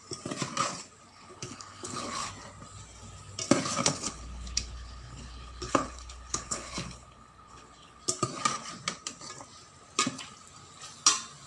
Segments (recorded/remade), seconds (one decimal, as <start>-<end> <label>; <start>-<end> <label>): 0.0-1.1 recorded; 1.1-2.3 remade; 2.3-3.8 recorded; 3.8-8.0 remade; 8.0-11.5 recorded